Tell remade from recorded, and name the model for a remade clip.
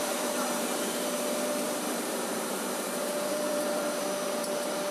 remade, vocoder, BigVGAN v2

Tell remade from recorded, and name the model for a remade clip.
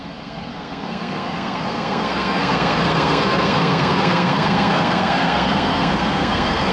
remade, codec, SNAC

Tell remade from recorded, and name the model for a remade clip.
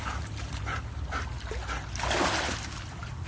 recorded